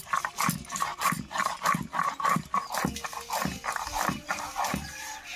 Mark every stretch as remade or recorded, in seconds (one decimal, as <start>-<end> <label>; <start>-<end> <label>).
0.0-5.4 recorded